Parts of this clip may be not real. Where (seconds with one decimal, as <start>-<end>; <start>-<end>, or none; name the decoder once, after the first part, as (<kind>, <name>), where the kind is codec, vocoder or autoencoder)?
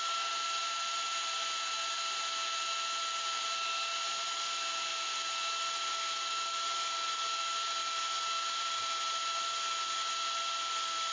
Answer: none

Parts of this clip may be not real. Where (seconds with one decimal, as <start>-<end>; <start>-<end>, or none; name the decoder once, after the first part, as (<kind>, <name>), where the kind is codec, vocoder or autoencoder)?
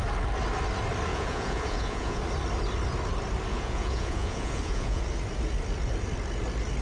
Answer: 1.1-2.2 (vocoder, Vocos); 3.5-5.0